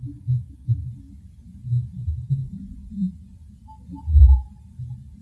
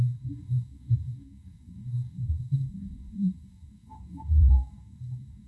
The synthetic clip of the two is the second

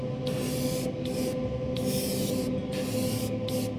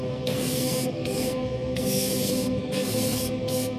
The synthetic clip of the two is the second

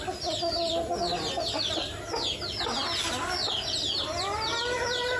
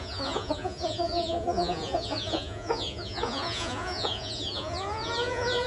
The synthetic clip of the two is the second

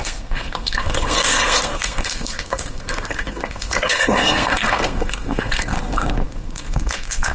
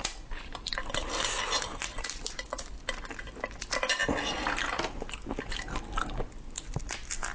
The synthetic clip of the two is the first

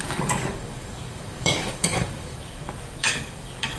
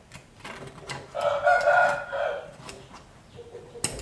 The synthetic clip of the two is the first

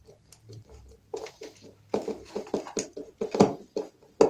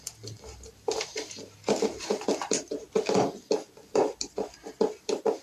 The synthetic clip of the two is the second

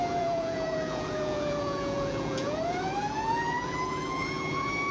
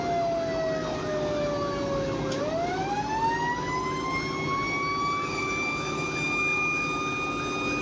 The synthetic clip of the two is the first